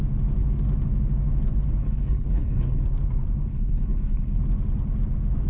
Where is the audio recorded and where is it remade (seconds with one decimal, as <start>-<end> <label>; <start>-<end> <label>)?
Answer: 0.0-1.8 recorded; 1.8-2.8 remade; 2.8-3.5 recorded; 3.5-4.4 remade; 4.4-5.5 recorded